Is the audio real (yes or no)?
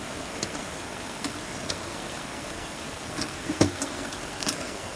no